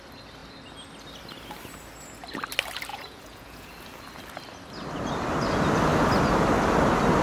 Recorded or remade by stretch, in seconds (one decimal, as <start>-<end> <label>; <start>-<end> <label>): 0.0-2.9 recorded; 2.9-3.7 remade; 3.7-7.2 recorded